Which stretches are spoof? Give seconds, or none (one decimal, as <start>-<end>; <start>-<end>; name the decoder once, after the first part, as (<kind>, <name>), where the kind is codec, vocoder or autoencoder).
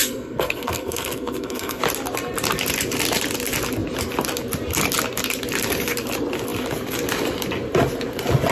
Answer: 0.0-1.8 (codec, SNAC)